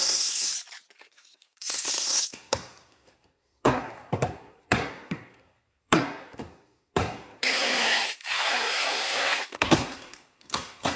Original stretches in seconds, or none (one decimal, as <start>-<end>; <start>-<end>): 0.5-1.0